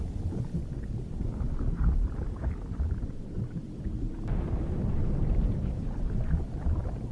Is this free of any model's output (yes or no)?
yes